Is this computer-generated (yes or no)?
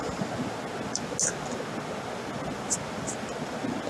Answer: no